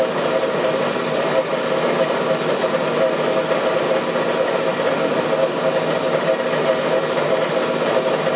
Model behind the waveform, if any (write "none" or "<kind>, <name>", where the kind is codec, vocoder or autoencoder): none